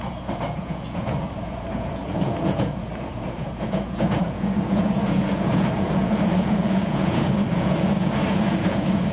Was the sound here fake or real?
fake